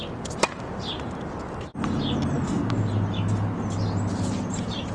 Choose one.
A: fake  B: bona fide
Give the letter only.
B